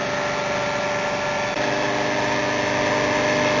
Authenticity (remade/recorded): recorded